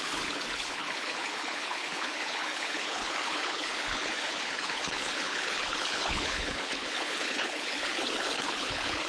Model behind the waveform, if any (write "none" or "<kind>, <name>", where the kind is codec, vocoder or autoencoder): codec, HILCodec